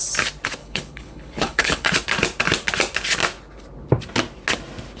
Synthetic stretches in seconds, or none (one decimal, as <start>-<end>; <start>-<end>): 0.6-1.9